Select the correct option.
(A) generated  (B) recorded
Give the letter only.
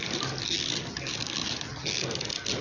B